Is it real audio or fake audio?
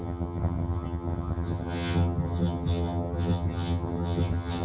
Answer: fake